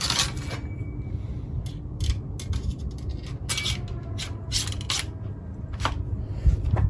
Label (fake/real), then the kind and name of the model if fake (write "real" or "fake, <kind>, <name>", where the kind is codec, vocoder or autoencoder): real